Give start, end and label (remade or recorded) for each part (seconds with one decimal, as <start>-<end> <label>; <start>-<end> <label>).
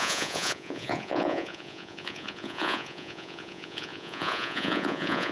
0.0-5.3 remade